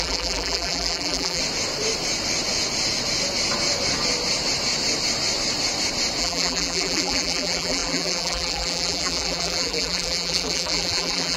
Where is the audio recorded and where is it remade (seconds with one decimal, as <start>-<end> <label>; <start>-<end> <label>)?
0.0-1.4 remade; 1.4-6.2 recorded; 6.2-11.4 remade